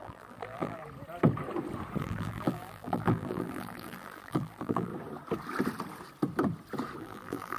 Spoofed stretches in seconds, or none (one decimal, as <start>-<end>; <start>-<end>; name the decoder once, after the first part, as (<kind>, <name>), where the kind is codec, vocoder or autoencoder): 0.0-0.8 (vocoder, BigVGAN v2); 2.0-4.9; 7.0-7.6